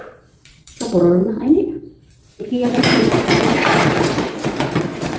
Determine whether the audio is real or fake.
fake